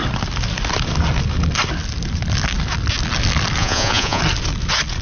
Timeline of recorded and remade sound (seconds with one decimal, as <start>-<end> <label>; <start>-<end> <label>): 0.0-3.6 recorded; 3.6-4.2 remade; 4.2-5.0 recorded